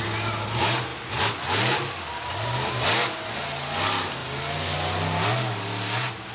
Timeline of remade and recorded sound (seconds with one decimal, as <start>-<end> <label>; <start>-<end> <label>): 0.0-0.9 recorded; 0.9-2.7 remade; 2.7-4.2 recorded; 4.2-6.3 remade